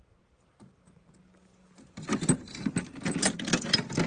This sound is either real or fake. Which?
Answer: real